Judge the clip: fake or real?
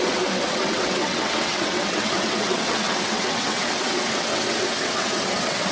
fake